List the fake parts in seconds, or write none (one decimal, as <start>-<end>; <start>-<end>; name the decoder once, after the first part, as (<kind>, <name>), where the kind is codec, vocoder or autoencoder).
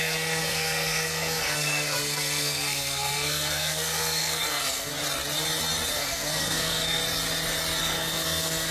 0.0-4.9 (codec, SNAC); 5.9-7.0; 7.8-8.7